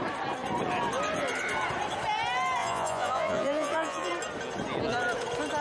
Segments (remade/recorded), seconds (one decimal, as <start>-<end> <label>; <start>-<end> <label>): 0.0-2.6 recorded; 2.6-4.1 remade; 4.1-5.6 recorded